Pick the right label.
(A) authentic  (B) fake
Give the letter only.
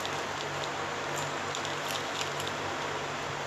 A